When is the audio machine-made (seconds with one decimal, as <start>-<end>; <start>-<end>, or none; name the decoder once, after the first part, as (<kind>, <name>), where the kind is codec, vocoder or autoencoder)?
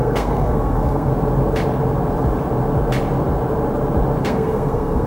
0.0-1.1 (codec, SNAC); 4.2-5.1